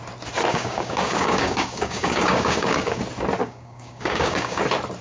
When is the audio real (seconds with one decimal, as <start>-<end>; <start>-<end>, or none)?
0.0-0.5; 3.0-3.4; 4.6-5.0